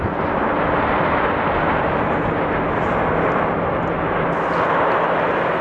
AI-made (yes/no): no